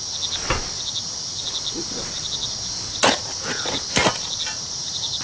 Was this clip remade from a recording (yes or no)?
no